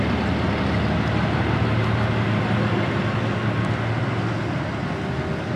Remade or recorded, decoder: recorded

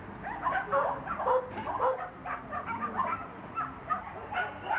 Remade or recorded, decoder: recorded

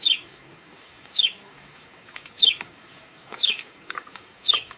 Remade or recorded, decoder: remade, codec, DAC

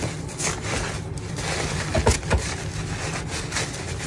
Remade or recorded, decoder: recorded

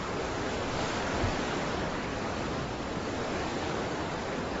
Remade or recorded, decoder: remade, codec, DAC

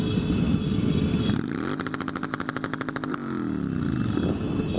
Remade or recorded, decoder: recorded